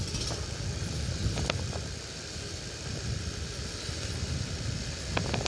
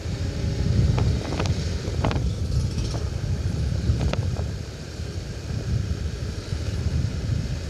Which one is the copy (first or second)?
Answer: second